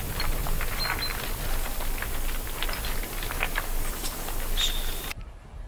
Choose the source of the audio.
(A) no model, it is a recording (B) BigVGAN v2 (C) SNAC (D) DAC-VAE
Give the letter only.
A